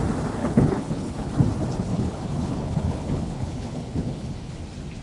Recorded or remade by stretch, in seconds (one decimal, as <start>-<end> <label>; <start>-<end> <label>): 0.0-0.4 recorded; 0.4-1.3 remade; 1.3-1.9 recorded; 1.9-4.6 remade; 4.6-5.0 recorded